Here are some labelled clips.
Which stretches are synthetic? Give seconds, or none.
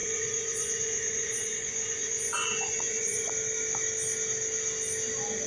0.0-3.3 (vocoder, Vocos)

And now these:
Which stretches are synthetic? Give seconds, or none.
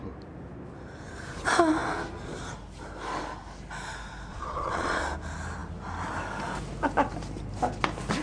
4.3-5.0 (vocoder, Vocos)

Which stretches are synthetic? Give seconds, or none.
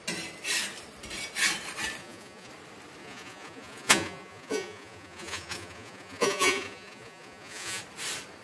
2.0-2.5 (vocoder, Vocos); 3.0-7.8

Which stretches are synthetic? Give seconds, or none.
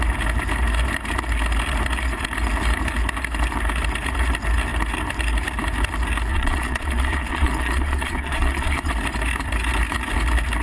6.3-8.9 (vocoder, Vocos)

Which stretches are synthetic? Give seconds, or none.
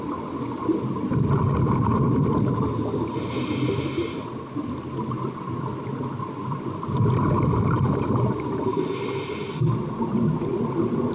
none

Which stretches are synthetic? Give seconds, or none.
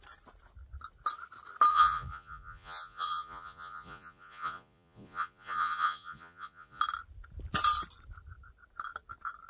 1.7-6.8 (vocoder, Vocos)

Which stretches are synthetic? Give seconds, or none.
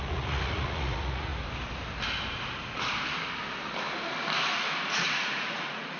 0.0-1.3 (vocoder, Vocos); 4.9-6.0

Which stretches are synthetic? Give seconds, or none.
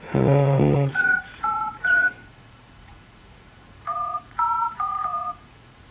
0.0-5.9 (vocoder, Vocos)